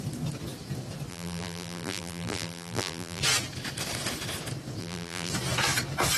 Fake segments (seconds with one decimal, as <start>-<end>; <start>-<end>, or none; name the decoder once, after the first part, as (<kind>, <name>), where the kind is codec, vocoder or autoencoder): 1.1-3.2 (vocoder, BigVGAN v2); 4.8-5.3